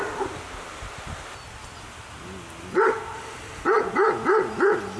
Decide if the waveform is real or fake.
real